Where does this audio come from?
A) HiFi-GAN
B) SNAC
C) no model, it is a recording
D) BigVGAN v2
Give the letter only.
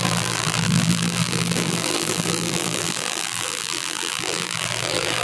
D